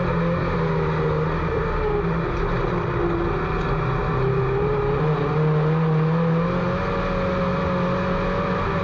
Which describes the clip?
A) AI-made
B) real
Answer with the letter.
B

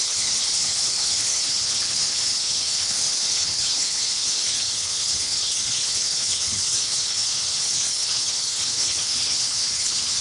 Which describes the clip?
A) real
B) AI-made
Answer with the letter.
B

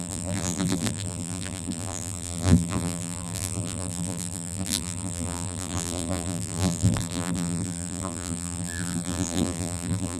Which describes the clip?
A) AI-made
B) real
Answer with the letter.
A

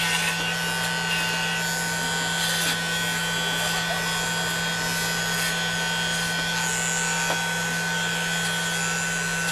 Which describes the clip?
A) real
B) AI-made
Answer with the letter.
A